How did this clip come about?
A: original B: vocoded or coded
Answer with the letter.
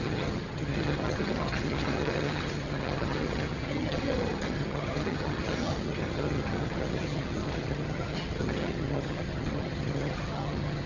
B